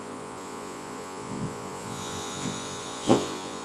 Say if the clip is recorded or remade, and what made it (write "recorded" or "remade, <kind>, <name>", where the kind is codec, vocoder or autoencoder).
remade, vocoder, Vocos